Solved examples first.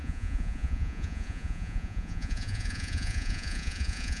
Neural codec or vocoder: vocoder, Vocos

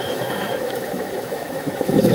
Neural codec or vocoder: autoencoder, DAC-VAE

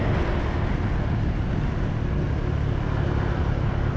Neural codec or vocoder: none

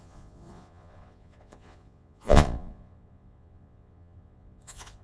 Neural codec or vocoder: vocoder, Vocos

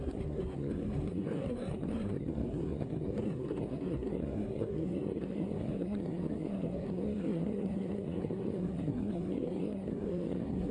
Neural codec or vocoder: codec, SNAC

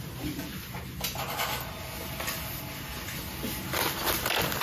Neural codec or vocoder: none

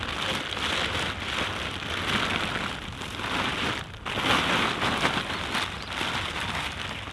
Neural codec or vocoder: none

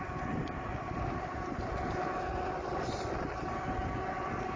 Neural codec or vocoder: none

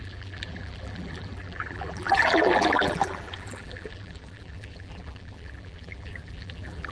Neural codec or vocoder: vocoder, BigVGAN v2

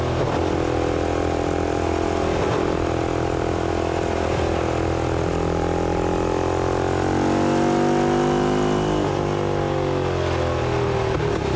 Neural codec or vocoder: none